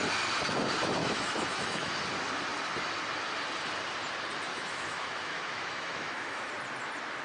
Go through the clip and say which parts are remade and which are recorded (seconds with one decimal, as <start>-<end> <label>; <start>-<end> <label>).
0.0-1.0 recorded; 1.0-1.9 remade; 1.9-4.5 recorded; 4.5-6.5 remade; 6.5-7.2 recorded